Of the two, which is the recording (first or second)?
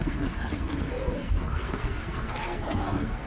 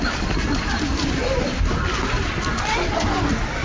second